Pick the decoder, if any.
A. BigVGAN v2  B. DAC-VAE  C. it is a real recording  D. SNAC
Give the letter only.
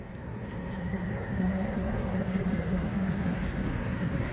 D